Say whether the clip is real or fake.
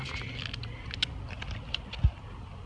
real